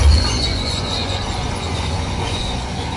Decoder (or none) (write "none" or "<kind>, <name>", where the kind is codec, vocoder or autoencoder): vocoder, Vocos